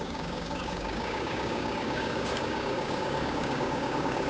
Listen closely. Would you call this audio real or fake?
fake